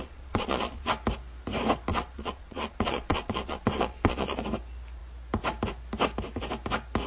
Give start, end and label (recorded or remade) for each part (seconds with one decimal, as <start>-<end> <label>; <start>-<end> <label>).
0.0-0.9 remade; 0.9-1.9 recorded; 1.9-4.4 remade; 4.4-7.1 recorded